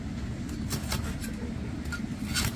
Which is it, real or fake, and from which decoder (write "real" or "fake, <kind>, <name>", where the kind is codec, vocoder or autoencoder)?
real